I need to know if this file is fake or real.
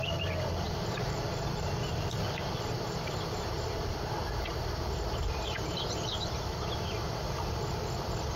fake